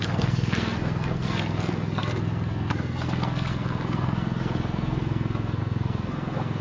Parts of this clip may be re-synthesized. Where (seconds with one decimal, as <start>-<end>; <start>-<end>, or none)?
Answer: 0.0-6.6